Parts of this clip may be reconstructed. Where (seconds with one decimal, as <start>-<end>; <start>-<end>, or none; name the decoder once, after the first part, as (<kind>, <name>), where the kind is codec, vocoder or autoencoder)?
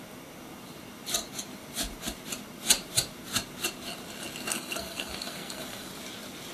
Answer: 4.5-5.9 (codec, SNAC)